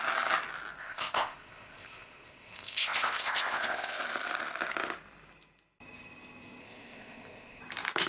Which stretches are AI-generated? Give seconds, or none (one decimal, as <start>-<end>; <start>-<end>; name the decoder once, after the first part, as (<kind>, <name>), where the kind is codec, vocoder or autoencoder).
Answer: 0.8-4.0 (codec, ZipCodec); 6.6-7.6